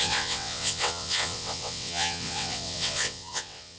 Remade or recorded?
remade